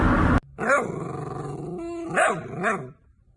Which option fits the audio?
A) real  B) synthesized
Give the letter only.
A